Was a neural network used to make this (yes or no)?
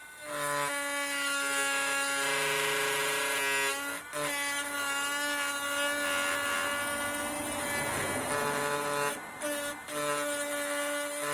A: no